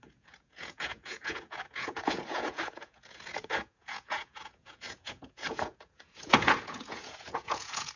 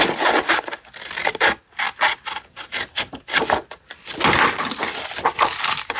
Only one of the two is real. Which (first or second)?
second